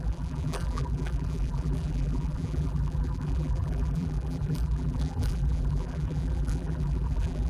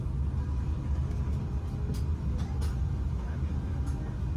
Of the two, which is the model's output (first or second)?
first